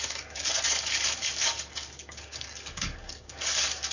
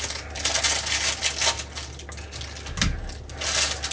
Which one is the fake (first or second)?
first